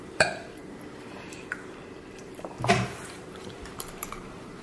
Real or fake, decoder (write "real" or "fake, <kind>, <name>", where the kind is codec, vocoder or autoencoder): fake, vocoder, BigVGAN v2